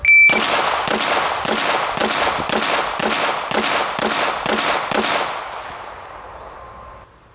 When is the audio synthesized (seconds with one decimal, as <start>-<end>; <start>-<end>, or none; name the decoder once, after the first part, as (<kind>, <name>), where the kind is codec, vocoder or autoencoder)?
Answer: none